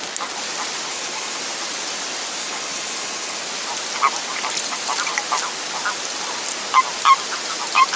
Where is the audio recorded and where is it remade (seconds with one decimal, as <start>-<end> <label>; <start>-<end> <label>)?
0.0-0.9 recorded; 0.9-1.4 remade; 1.4-2.4 recorded; 2.4-3.4 remade; 3.4-8.0 recorded